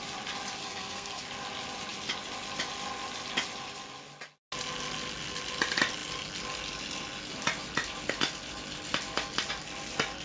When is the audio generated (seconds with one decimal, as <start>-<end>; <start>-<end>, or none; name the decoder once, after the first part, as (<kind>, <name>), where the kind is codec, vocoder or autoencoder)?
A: 0.6-1.2 (codec, SNAC)